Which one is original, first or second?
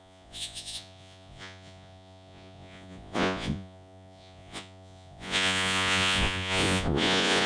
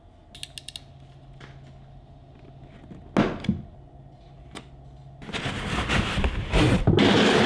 second